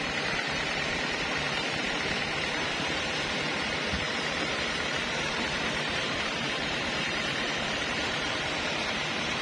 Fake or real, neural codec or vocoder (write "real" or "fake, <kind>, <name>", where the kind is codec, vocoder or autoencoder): fake, vocoder, BigVGAN v2